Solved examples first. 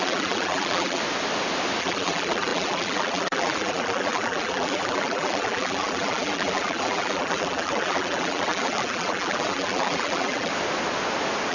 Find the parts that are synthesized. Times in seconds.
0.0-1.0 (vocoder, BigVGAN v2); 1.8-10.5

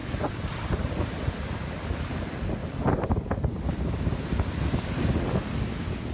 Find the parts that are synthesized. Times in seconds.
2.6-3.2 (vocoder, BigVGAN v2)

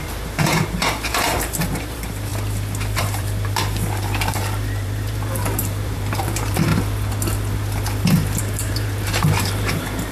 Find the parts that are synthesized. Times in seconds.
0.0-2.3 (vocoder, BigVGAN v2); 3.0-6.7; 8.4-10.1

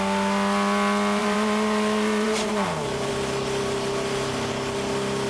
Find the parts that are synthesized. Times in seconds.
1.2-3.1 (vocoder, BigVGAN v2)

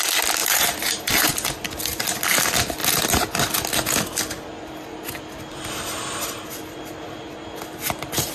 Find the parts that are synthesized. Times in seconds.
0.4-1.3 (vocoder, BigVGAN v2)

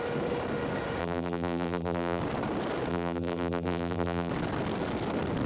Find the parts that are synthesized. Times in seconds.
1.0-2.2 (vocoder, BigVGAN v2); 2.9-4.3

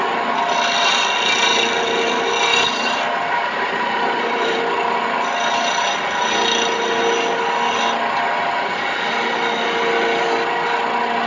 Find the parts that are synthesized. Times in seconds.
2.5-4.6 (vocoder, BigVGAN v2)